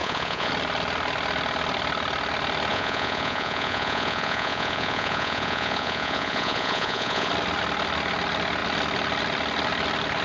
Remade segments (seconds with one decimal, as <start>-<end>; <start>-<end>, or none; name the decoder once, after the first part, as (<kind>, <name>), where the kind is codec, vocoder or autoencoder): 0.0-0.5 (vocoder, Vocos); 2.7-7.3